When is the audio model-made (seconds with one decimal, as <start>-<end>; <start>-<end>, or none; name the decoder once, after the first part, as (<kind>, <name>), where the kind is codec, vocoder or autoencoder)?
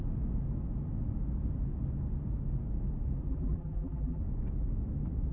3.3-4.2 (vocoder, BigVGAN v2)